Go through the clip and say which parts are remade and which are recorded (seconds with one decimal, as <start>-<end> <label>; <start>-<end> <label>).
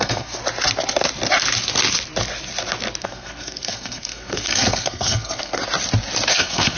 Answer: 0.0-0.4 remade; 0.4-3.0 recorded; 3.0-5.6 remade; 5.6-6.3 recorded; 6.3-6.8 remade